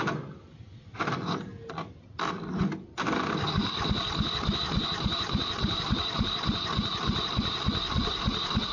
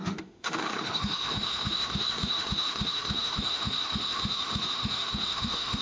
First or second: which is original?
first